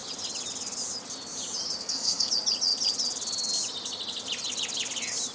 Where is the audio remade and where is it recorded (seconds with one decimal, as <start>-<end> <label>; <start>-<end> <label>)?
0.0-1.8 recorded; 1.8-2.3 remade; 2.3-5.3 recorded